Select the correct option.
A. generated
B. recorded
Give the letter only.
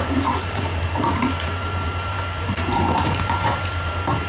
A